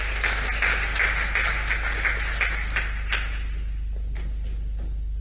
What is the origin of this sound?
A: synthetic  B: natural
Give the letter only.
B